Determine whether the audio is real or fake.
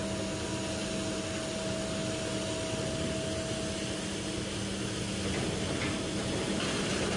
real